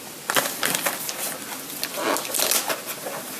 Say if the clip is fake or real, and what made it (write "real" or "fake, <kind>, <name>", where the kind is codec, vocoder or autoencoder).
real